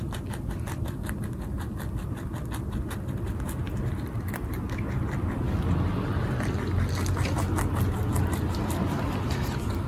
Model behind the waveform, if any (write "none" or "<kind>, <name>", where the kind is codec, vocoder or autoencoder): none